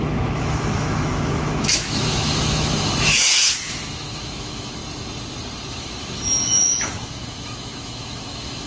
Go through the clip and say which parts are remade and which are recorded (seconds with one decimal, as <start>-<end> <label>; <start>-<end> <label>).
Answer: 0.0-4.8 remade; 4.8-5.7 recorded; 5.7-8.7 remade